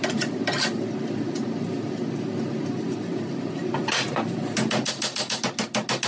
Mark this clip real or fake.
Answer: real